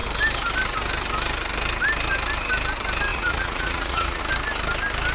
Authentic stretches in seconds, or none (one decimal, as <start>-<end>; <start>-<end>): 0.0-3.1; 4.2-5.1